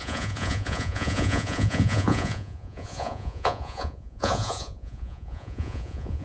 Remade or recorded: remade